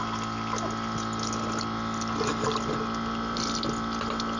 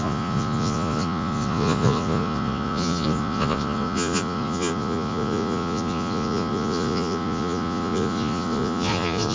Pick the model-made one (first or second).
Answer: second